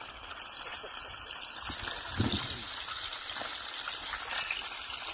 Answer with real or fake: real